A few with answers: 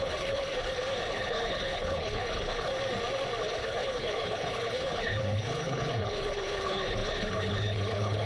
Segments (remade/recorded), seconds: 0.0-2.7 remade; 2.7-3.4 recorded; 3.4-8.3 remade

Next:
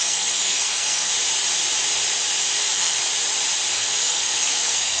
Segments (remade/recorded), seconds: 0.0-1.1 remade; 1.1-2.6 recorded; 2.6-3.0 remade; 3.0-3.7 recorded; 3.7-5.0 remade

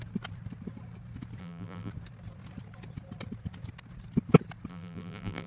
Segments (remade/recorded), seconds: 0.0-1.4 recorded; 1.4-1.9 remade; 1.9-4.7 recorded; 4.7-5.5 remade